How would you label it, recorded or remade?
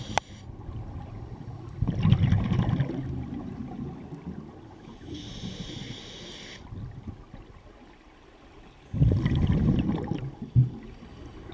recorded